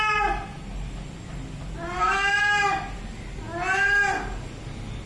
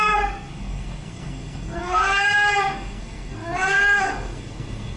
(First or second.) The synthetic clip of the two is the second